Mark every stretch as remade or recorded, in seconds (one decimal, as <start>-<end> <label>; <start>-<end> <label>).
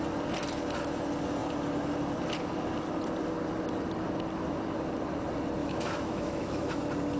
0.0-5.6 recorded; 5.6-6.8 remade; 6.8-7.2 recorded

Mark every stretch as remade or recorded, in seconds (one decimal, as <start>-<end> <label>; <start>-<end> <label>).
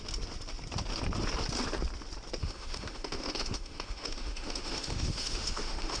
0.0-2.4 recorded; 2.4-6.0 remade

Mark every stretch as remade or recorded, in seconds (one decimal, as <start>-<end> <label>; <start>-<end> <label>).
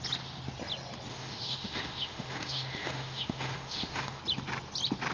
0.0-1.1 recorded; 1.1-4.2 remade; 4.2-5.1 recorded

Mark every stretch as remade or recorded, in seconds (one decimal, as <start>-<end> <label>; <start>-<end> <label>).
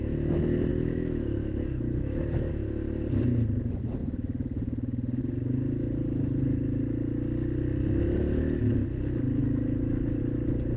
0.0-0.7 recorded; 0.7-2.5 remade; 2.5-9.4 recorded; 9.4-10.2 remade; 10.2-10.8 recorded